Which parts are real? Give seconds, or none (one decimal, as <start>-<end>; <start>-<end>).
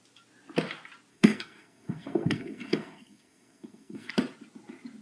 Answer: 0.0-1.1; 4.1-5.0